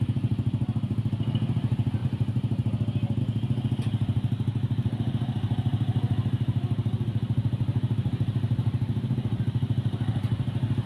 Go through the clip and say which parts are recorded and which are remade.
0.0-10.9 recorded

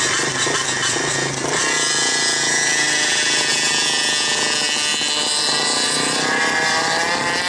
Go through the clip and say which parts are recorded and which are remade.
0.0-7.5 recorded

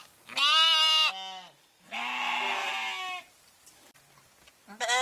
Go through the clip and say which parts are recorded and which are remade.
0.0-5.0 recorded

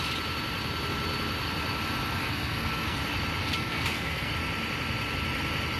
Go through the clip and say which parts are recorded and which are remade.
0.0-2.2 recorded; 2.2-3.0 remade; 3.0-3.4 recorded; 3.4-4.3 remade; 4.3-5.8 recorded

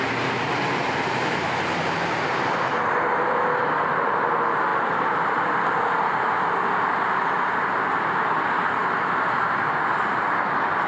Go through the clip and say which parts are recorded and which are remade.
0.0-10.9 recorded

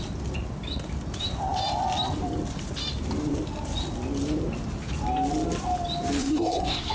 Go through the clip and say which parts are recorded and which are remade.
0.0-6.2 recorded; 6.2-6.9 remade

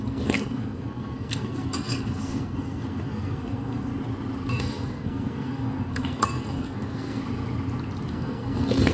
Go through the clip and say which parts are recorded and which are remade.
0.0-3.9 remade; 3.9-4.5 recorded; 4.5-7.2 remade; 7.2-8.1 recorded; 8.1-8.9 remade

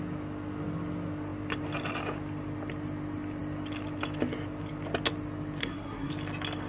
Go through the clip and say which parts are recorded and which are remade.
0.0-5.6 recorded; 5.6-6.1 remade; 6.1-6.7 recorded